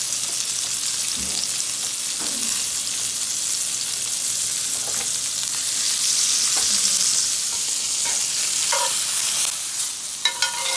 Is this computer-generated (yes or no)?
no